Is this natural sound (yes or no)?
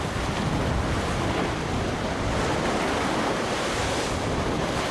yes